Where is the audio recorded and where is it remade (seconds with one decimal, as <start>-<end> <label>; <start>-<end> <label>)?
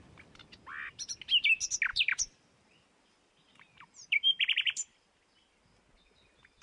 0.0-1.9 recorded; 1.9-5.6 remade; 5.6-6.6 recorded